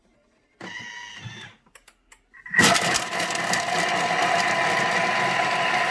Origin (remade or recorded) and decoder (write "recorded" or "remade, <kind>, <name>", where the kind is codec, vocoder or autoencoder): recorded